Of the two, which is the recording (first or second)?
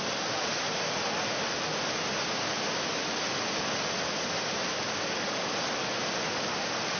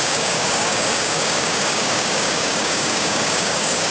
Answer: first